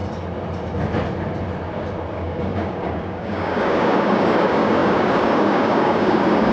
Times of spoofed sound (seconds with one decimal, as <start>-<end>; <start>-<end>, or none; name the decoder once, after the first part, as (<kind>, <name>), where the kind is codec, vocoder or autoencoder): 2.1-6.5 (codec, DAC)